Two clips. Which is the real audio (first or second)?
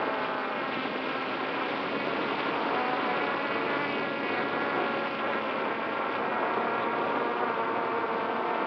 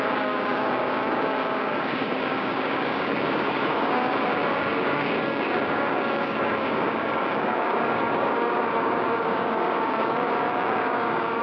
first